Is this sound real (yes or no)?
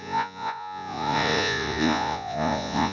no